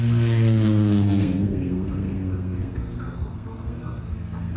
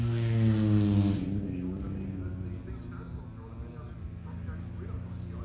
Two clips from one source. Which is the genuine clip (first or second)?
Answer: second